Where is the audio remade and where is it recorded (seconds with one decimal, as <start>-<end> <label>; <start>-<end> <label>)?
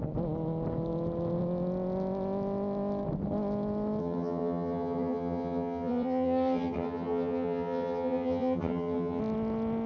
0.0-4.0 recorded; 4.0-9.2 remade; 9.2-9.9 recorded